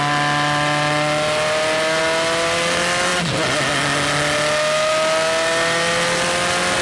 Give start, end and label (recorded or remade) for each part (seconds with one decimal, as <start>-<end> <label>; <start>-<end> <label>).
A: 0.0-6.8 recorded

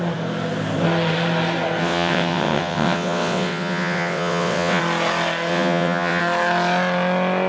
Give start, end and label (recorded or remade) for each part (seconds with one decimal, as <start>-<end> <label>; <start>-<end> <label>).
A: 0.0-1.8 recorded; 1.8-4.8 remade; 4.8-5.5 recorded; 5.5-6.2 remade; 6.2-7.5 recorded

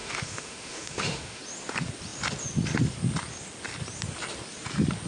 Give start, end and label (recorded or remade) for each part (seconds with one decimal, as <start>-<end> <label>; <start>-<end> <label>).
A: 0.0-1.4 remade; 1.4-5.1 recorded

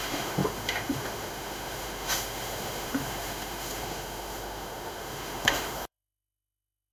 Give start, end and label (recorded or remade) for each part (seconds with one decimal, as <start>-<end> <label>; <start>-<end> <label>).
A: 0.0-6.9 remade

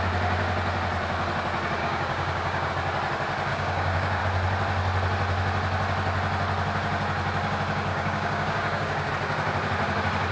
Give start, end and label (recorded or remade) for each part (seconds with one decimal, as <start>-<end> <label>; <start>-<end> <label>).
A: 0.0-1.8 recorded; 1.8-2.7 remade; 2.7-3.5 recorded; 3.5-4.2 remade; 4.2-7.9 recorded; 7.9-9.1 remade; 9.1-10.3 recorded

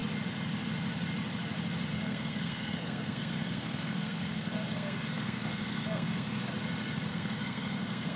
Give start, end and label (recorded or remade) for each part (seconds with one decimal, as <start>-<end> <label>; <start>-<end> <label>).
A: 0.0-1.9 recorded; 1.9-6.5 remade; 6.5-7.1 recorded; 7.1-8.2 remade

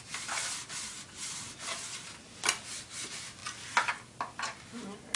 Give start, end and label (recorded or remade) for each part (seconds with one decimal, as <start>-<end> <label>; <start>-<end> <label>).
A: 0.0-5.2 recorded